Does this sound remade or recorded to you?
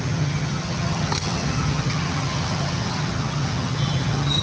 remade